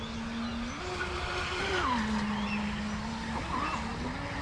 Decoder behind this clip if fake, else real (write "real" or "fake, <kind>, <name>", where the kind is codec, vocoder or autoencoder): real